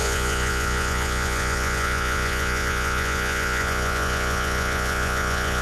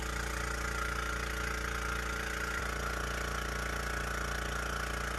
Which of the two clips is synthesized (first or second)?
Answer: first